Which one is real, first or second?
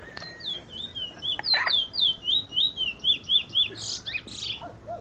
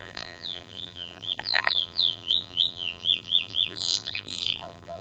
first